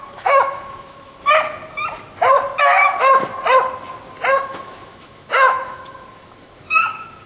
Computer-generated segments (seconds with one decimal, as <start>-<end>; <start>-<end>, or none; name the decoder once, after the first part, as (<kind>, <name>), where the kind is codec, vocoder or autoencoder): 0.0-1.2 (autoencoder, DAC-VAE); 2.6-3.3; 4.3-7.3